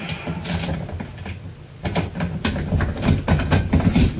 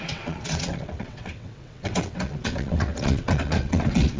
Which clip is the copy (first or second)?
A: second